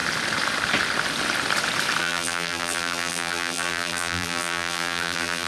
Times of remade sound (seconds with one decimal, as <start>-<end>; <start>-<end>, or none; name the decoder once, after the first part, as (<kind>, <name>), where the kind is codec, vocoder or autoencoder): 2.0-5.5 (vocoder, BigVGAN v2)